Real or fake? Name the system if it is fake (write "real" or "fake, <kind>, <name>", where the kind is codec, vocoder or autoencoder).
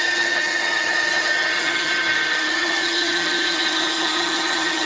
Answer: fake, vocoder, HiFi-GAN